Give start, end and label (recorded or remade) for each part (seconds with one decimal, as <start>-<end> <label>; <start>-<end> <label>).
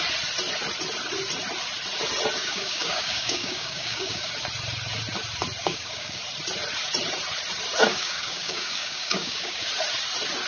0.0-2.4 recorded; 2.4-4.3 remade; 4.3-5.6 recorded; 5.6-6.2 remade; 6.2-7.9 recorded; 7.9-9.7 remade; 9.7-10.5 recorded